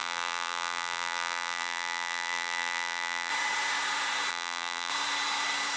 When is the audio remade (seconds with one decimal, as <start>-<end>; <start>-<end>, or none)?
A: 0.0-3.3; 4.3-4.9